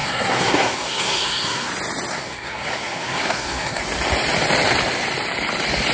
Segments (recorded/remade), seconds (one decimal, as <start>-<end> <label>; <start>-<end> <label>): 0.0-1.7 remade; 1.7-2.1 recorded; 2.1-3.8 remade; 3.8-5.9 recorded